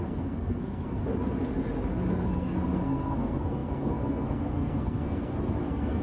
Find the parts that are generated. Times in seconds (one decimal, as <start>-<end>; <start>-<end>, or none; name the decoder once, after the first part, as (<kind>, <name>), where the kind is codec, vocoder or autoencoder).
0.0-1.0 (codec, SNAC); 2.1-6.0